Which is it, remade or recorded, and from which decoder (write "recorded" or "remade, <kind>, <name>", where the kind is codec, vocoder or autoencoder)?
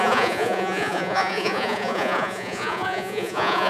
remade, vocoder, Vocos